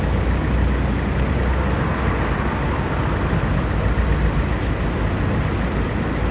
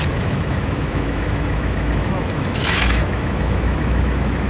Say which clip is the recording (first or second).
first